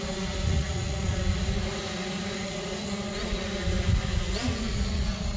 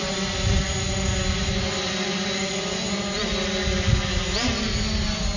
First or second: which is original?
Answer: second